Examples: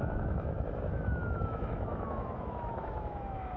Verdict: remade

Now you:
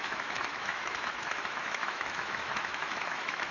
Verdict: remade